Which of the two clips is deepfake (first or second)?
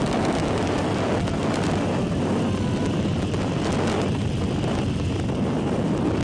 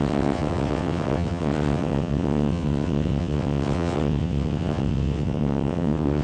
second